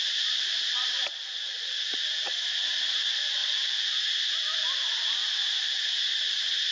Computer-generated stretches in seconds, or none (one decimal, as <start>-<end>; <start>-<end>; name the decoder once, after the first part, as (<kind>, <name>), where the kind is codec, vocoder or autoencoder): none

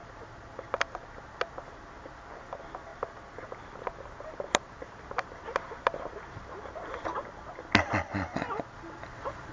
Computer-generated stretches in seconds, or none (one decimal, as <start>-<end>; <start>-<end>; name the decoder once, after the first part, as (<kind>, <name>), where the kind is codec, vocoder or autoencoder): none